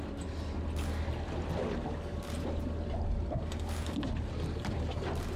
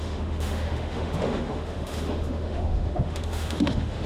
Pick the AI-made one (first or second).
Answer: second